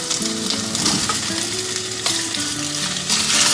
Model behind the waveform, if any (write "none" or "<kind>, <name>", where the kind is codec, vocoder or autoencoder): none